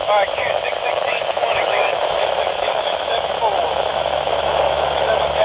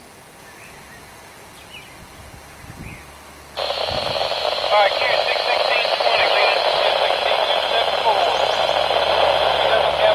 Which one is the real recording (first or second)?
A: second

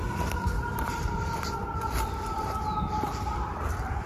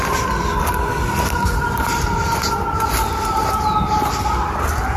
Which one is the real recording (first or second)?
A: second